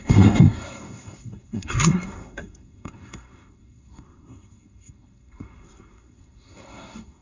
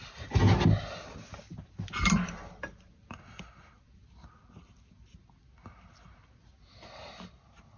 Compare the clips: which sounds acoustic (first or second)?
second